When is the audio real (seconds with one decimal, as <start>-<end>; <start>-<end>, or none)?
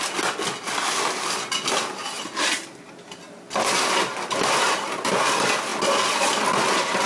0.0-7.1